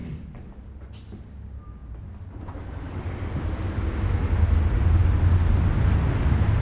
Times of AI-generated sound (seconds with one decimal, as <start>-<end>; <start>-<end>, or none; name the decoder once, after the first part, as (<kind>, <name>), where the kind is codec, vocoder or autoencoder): none